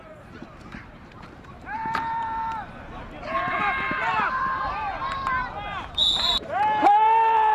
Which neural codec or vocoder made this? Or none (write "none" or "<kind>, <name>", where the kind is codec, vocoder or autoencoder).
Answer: vocoder, BigVGAN v2